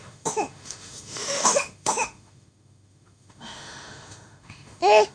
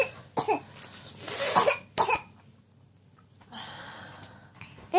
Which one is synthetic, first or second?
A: first